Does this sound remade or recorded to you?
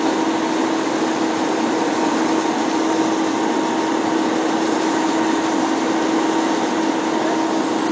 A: recorded